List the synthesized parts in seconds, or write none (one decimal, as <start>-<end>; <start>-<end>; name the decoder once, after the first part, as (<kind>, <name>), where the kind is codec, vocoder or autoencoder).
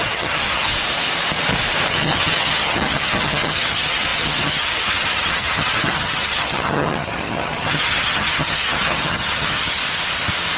0.0-0.7 (vocoder, HiFi-GAN); 1.9-9.8